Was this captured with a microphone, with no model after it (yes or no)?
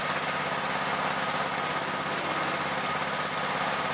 yes